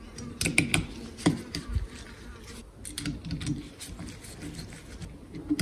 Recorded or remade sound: recorded